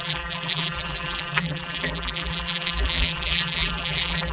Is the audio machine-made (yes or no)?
yes